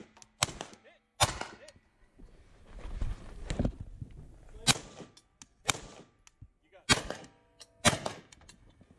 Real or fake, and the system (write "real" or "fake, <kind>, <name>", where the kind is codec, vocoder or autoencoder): real